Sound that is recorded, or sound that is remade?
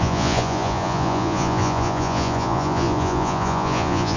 remade